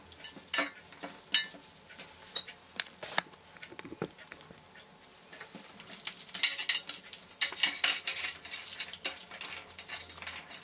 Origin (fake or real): real